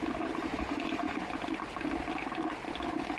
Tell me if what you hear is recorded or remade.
recorded